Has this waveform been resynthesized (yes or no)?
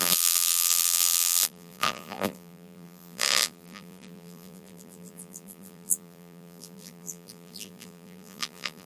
yes